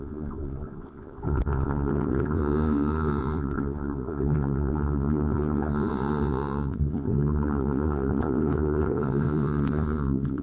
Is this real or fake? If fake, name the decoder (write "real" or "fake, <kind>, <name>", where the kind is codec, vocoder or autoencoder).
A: fake, vocoder, Vocos